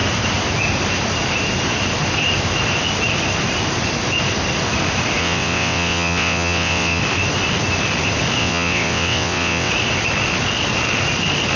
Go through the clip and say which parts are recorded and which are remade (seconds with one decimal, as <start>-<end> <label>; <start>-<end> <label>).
0.0-5.2 recorded; 5.2-7.0 remade; 7.0-8.4 recorded; 8.4-9.7 remade; 9.7-11.6 recorded